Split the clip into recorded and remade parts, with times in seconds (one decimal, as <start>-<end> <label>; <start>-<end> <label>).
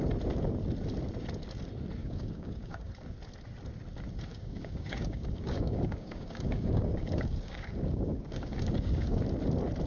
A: 0.0-2.0 recorded; 2.0-2.9 remade; 2.9-4.3 recorded; 4.3-9.2 remade; 9.2-9.9 recorded